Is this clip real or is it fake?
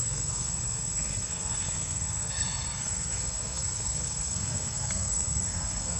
fake